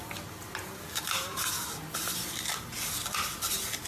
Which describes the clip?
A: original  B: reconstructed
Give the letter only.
A